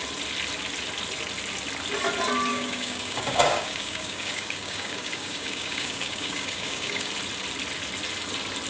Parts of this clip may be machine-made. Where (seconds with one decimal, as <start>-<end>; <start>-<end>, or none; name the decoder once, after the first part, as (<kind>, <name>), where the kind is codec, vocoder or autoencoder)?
2.5-7.1 (codec, DAC)